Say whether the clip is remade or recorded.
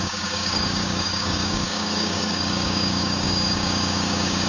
remade